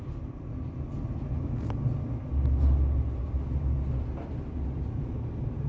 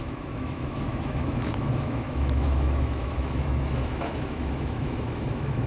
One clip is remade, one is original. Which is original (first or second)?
first